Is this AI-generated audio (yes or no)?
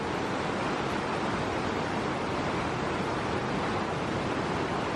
no